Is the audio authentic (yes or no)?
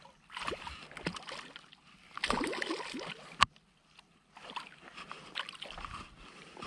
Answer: yes